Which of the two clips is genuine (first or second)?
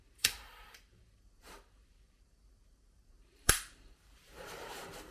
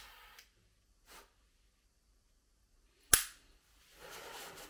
second